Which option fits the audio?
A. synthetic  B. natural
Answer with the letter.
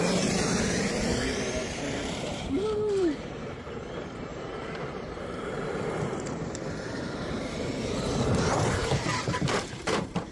A